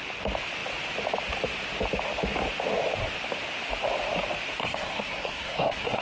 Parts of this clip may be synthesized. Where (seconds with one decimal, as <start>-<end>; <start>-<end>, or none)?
4.6-6.0